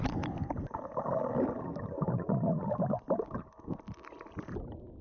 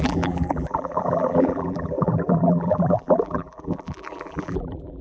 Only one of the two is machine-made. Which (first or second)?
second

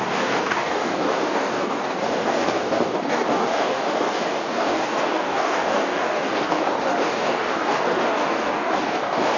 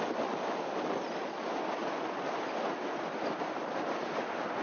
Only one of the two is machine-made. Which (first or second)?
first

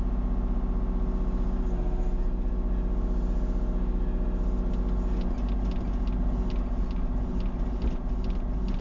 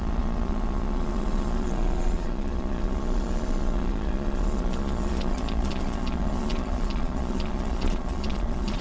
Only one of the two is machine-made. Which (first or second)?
second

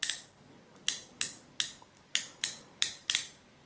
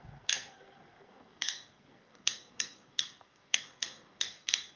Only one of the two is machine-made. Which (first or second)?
second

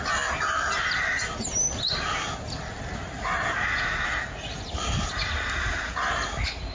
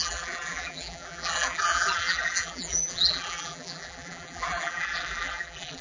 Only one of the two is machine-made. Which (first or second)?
second